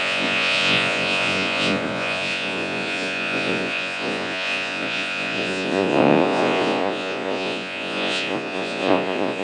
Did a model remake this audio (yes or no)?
yes